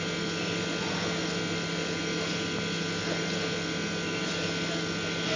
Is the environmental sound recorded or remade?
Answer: recorded